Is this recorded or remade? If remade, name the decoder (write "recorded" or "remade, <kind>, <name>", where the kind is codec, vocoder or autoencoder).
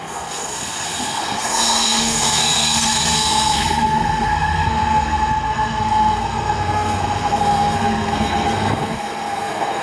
remade, codec, SNAC